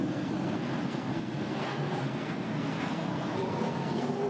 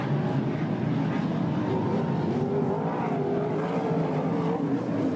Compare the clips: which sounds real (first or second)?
second